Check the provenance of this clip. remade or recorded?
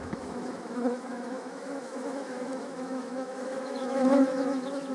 remade